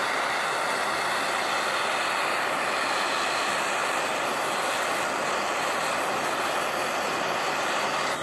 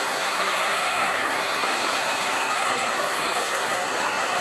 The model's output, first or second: second